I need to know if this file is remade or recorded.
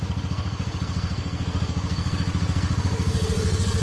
remade